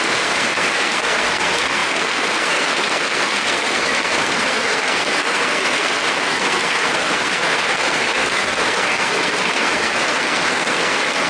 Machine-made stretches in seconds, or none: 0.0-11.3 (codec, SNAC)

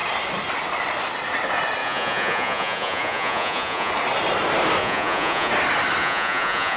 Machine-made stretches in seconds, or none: 1.8-3.9 (vocoder, Vocos); 4.8-5.5; 6.0-6.8

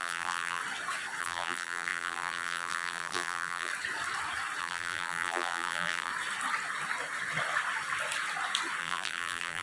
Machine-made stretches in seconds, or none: 0.0-0.6 (vocoder, BigVGAN v2); 1.2-3.7; 4.6-6.1; 8.8-9.6

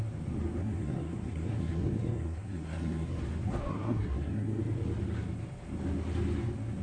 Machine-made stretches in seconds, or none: 0.6-3.2 (codec, SNAC); 3.7-4.6

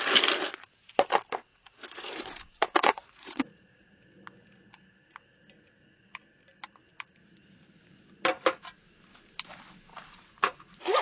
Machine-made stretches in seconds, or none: 1.5-4.0 (vocoder, Vocos); 9.9-11.0

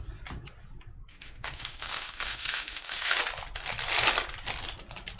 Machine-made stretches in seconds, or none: 1.1-3.2 (autoencoder, DAC-VAE)